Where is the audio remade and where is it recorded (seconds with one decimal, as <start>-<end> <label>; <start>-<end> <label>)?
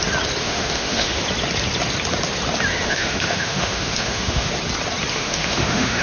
0.0-0.4 recorded; 0.4-1.2 remade; 1.2-2.7 recorded; 2.7-4.5 remade; 4.5-5.1 recorded; 5.1-6.0 remade